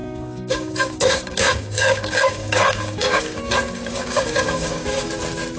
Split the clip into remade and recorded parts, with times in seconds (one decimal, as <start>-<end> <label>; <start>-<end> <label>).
0.0-3.4 remade; 3.4-3.9 recorded; 3.9-5.1 remade; 5.1-5.6 recorded